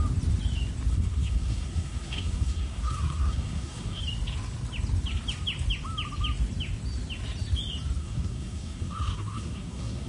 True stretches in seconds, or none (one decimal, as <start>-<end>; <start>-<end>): 0.0-0.9; 4.0-8.0